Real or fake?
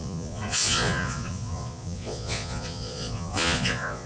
fake